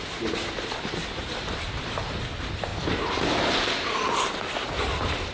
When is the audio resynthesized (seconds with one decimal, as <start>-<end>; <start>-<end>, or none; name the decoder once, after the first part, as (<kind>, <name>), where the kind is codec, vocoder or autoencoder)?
none